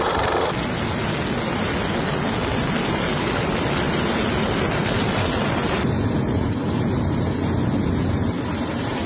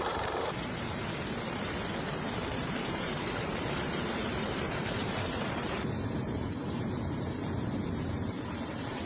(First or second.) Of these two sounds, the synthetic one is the second